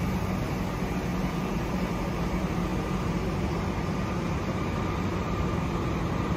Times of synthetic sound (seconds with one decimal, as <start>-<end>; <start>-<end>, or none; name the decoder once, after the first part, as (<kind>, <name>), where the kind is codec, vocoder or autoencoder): none